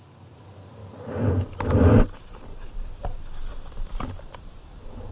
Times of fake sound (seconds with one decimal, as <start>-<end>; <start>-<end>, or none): none